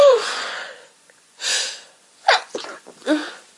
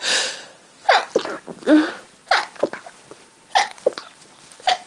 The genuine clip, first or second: second